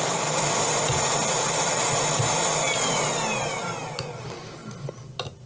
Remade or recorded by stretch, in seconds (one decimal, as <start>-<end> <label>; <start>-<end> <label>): 0.0-5.5 recorded